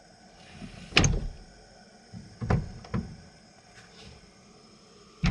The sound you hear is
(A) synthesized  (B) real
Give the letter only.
B